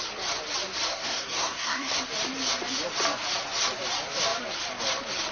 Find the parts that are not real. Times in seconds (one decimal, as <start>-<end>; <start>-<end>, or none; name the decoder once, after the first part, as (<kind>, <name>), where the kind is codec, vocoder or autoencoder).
0.9-2.0 (codec, SNAC)